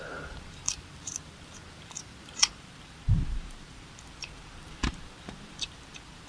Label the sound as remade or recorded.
remade